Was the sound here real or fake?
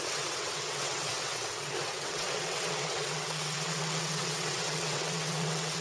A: fake